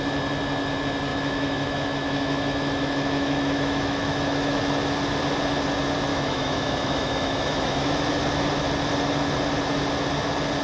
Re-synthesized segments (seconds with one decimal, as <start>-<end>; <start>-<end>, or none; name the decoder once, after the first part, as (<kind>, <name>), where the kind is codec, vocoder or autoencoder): 1.1-4.6 (autoencoder, DAC-VAE); 6.1-8.0